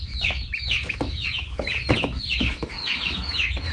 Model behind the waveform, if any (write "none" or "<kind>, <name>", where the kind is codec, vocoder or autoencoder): autoencoder, DAC-VAE